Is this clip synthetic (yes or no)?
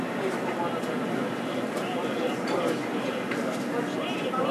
no